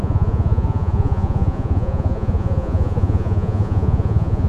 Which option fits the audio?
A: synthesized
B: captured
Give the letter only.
A